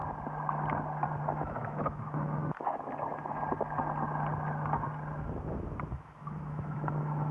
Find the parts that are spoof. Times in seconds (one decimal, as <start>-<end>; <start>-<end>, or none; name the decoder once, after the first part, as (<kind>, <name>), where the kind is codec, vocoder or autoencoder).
1.2-2.4 (autoencoder, DAC-VAE); 5.9-7.3